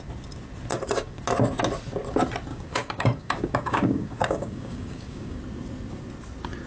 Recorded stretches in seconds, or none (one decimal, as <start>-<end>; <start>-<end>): 0.0-0.7; 1.2-2.5; 5.4-6.7